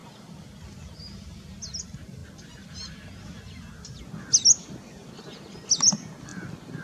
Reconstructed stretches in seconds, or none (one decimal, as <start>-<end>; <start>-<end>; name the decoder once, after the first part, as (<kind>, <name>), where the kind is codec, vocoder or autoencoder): none